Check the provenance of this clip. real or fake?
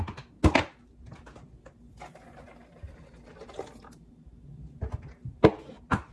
real